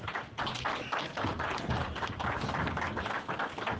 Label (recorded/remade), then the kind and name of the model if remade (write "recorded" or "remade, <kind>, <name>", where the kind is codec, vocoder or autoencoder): recorded